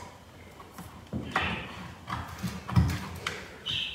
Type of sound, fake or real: real